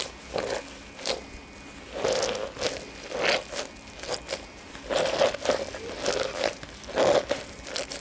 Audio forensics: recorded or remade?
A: recorded